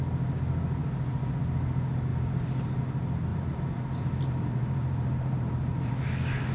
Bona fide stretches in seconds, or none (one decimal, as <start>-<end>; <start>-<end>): 0.0-2.1; 2.8-3.3; 5.9-6.5